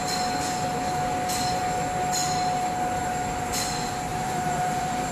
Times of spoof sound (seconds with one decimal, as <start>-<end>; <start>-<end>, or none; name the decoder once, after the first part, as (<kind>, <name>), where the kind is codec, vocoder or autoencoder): 4.1-5.1 (vocoder, BigVGAN v2)